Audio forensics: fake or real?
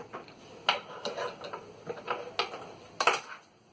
real